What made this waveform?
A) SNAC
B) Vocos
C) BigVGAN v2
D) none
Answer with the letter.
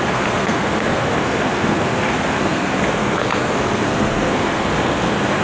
A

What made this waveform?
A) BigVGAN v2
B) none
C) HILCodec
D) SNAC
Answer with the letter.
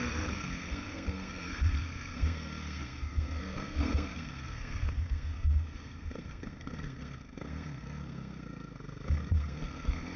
D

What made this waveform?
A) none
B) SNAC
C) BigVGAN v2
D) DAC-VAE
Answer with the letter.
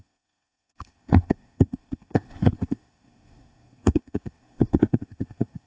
B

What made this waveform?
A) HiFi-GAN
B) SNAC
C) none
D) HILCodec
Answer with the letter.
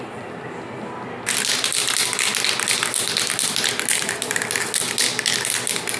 C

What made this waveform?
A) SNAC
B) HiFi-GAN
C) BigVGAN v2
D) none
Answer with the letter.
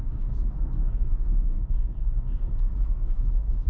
A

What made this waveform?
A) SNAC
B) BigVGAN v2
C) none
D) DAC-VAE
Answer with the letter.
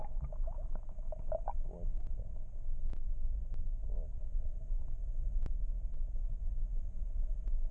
C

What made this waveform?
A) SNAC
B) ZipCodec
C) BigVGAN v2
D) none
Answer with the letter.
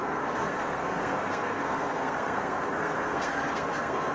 A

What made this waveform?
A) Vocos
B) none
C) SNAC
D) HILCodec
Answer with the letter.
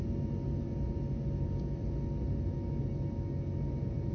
B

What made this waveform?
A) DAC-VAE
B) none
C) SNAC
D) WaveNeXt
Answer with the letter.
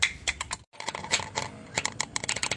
B